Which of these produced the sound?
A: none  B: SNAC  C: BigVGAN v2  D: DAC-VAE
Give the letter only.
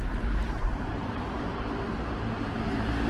C